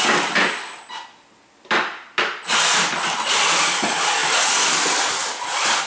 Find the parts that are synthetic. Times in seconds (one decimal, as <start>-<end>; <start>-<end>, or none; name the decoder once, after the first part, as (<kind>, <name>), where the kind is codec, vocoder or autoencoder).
none